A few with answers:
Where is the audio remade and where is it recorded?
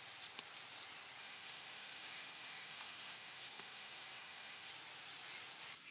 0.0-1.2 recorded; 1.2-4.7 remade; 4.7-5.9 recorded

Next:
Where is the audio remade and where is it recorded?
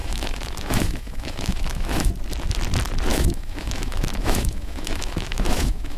0.0-2.1 remade; 2.1-3.1 recorded; 3.1-6.0 remade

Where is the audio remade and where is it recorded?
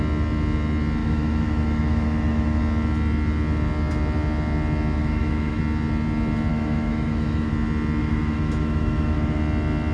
0.0-1.0 recorded; 1.0-2.6 remade; 2.6-5.0 recorded; 5.0-5.6 remade; 5.6-6.5 recorded; 6.5-7.5 remade; 7.5-8.0 recorded; 8.0-9.4 remade; 9.4-9.9 recorded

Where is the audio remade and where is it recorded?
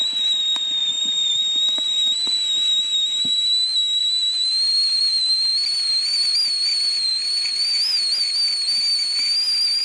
0.0-9.8 recorded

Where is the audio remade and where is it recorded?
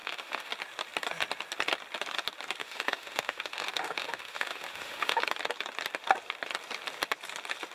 0.0-0.5 remade; 0.5-2.6 recorded; 2.6-5.2 remade; 5.2-7.7 recorded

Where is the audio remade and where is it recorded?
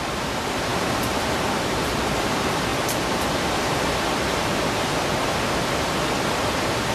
0.0-6.9 recorded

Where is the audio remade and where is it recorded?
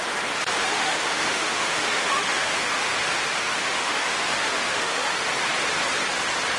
0.0-0.7 recorded; 0.7-3.0 remade; 3.0-3.4 recorded; 3.4-5.3 remade; 5.3-6.6 recorded